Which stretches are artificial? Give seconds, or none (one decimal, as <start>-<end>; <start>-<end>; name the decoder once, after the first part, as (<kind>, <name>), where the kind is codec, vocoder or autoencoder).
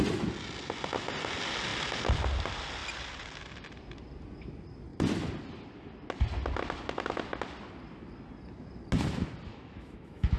9.5-10.4 (autoencoder, DAC-VAE)